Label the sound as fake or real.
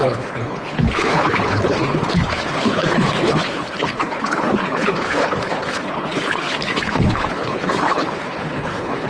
fake